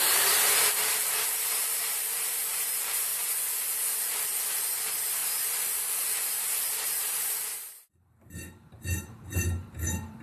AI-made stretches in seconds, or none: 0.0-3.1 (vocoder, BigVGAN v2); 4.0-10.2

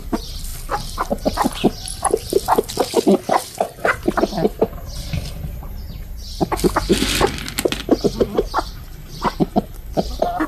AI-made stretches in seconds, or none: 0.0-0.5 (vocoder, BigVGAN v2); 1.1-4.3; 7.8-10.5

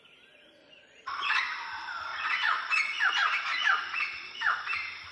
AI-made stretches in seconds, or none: 0.6-1.4 (vocoder, Vocos); 2.1-4.6

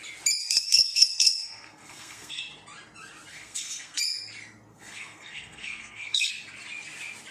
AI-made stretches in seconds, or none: 0.4-2.4 (codec, SNAC); 3.3-4.0; 4.7-6.3

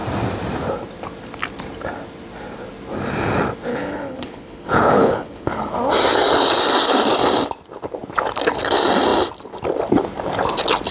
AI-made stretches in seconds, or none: 3.7-5.7 (codec, HILCodec)

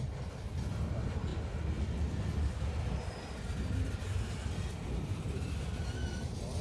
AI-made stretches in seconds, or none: none

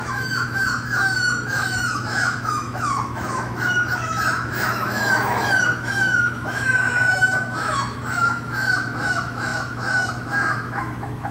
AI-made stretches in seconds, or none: 0.0-11.3 (autoencoder, DAC-VAE)